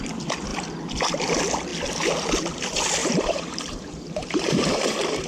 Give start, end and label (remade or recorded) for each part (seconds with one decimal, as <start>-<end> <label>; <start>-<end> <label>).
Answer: 0.0-3.0 recorded; 3.0-5.3 remade